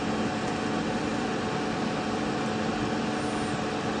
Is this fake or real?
real